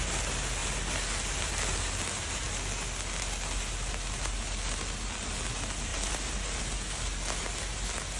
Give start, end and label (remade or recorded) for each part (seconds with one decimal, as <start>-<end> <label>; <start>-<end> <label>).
0.0-5.9 recorded; 5.9-6.6 remade; 6.6-8.2 recorded